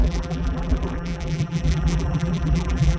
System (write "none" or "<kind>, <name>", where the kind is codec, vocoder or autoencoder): vocoder, BigVGAN v2